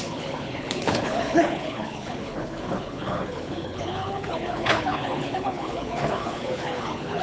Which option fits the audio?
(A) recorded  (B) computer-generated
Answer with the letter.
B